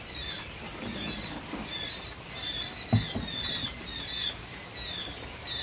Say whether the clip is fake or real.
real